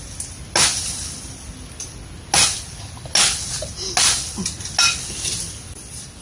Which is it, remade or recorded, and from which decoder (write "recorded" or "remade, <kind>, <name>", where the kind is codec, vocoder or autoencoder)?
recorded